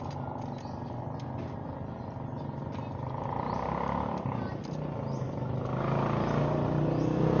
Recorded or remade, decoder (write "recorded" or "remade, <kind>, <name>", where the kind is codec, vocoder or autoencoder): recorded